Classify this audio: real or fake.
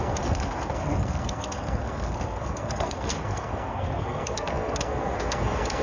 fake